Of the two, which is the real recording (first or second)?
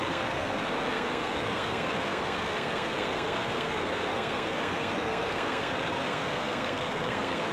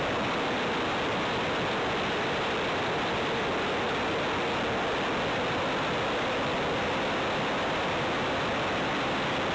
second